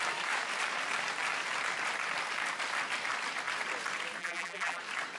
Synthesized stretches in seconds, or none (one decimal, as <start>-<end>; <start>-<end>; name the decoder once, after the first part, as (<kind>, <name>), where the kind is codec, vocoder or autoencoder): 4.2-4.8 (vocoder, BigVGAN v2)